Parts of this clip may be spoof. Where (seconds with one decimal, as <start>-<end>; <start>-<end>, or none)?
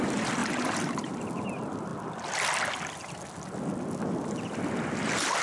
0.4-1.1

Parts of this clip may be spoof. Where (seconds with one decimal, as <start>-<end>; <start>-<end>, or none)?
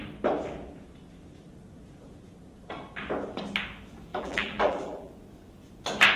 4.1-5.1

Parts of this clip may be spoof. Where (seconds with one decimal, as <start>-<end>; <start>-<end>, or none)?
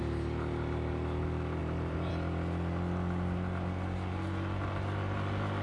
1.6-2.1